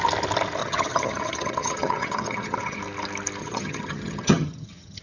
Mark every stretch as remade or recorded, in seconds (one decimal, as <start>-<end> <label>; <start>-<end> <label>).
0.0-0.6 recorded; 0.6-2.8 remade; 2.8-3.4 recorded; 3.4-5.0 remade